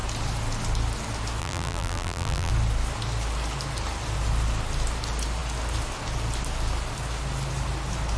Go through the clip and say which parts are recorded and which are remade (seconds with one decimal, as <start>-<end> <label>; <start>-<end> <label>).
0.0-1.4 recorded; 1.4-2.5 remade; 2.5-8.2 recorded